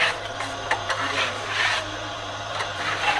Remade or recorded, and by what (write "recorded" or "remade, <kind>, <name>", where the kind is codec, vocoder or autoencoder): remade, vocoder, BigVGAN v2